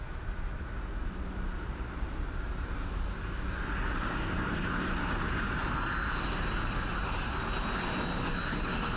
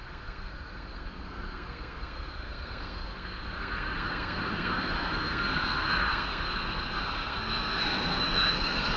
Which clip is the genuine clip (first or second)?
first